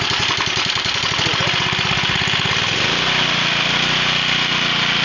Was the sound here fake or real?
real